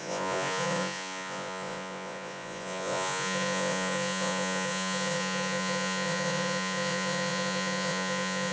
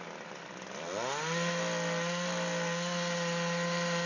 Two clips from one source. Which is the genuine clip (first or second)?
second